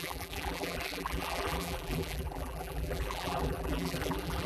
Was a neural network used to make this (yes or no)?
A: yes